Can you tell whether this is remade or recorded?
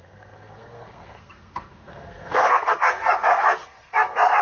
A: remade